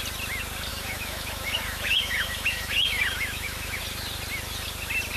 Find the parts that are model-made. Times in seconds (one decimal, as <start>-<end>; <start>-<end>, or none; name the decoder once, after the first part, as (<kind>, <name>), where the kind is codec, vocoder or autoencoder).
0.7-3.8 (autoencoder, DAC-VAE)